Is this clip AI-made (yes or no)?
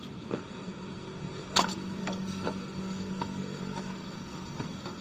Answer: yes